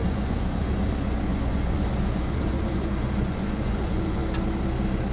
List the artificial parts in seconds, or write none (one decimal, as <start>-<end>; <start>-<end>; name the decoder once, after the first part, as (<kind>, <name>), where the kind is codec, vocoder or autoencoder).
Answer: 0.0-4.2 (vocoder, Vocos)